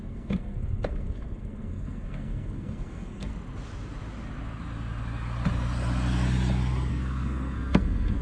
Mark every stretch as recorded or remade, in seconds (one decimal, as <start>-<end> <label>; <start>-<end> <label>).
0.0-3.3 remade; 3.3-6.9 recorded; 6.9-8.2 remade